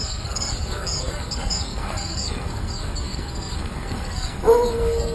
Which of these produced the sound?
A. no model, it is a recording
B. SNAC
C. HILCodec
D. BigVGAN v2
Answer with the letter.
B